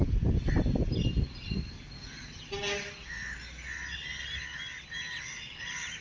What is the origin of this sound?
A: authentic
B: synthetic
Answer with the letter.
A